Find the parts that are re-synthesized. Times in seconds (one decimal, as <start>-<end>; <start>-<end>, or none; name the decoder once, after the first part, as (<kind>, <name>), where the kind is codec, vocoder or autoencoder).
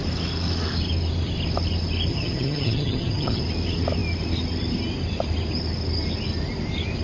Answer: 2.1-3.4 (vocoder, HiFi-GAN)